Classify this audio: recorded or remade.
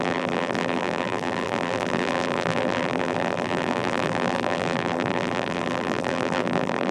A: remade